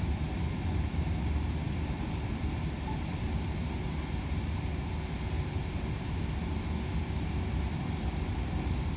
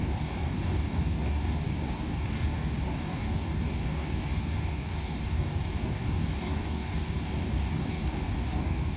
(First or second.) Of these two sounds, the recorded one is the first